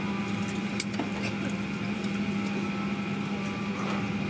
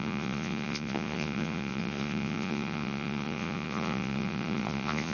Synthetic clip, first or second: second